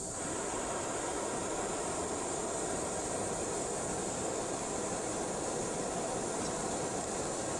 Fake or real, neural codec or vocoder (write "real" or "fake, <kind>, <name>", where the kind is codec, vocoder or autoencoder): real